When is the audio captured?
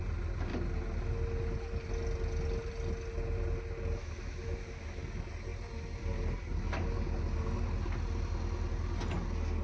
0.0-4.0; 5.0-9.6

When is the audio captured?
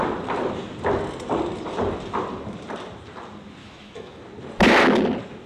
0.0-3.6; 4.2-5.5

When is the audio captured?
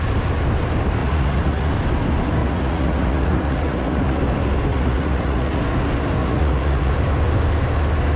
0.0-1.0; 1.7-2.4; 4.2-4.7; 5.6-6.2; 6.9-8.2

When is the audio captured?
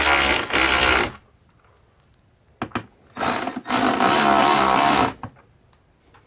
0.0-6.3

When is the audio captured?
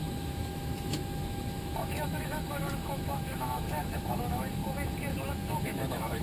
4.6-5.3